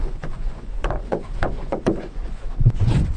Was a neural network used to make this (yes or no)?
yes